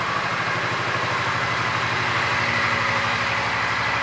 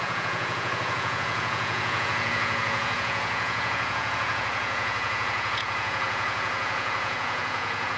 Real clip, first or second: first